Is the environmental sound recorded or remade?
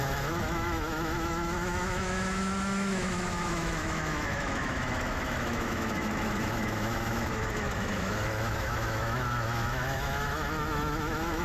remade